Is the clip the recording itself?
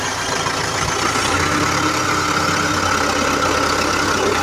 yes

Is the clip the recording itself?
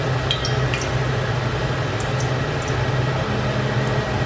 yes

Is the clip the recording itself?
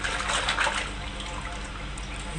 yes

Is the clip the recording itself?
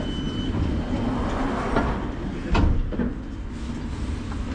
yes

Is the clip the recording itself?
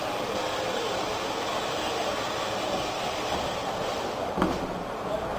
yes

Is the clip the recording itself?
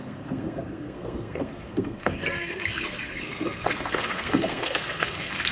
no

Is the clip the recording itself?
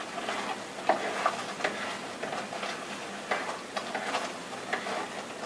yes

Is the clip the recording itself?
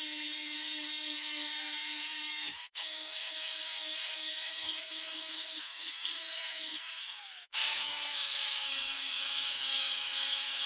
no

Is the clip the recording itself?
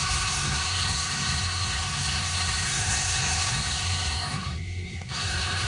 no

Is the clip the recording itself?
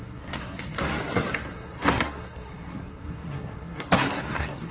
no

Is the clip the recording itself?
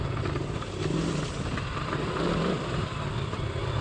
yes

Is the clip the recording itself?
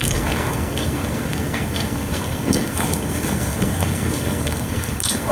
no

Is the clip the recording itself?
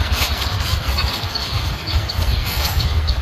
no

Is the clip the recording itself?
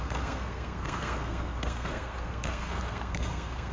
no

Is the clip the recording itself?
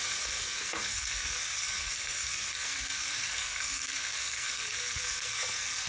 no